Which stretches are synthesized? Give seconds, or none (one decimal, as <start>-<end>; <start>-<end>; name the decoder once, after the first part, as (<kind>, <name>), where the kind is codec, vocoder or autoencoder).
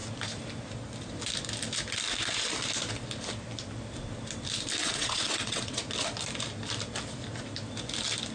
4.8-5.8 (vocoder, WaveNeXt)